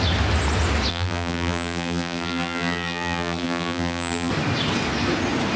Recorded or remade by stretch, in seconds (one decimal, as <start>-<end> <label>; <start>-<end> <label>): 0.0-0.9 recorded; 0.9-4.3 remade; 4.3-5.6 recorded